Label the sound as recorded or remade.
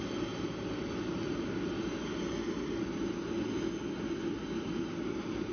recorded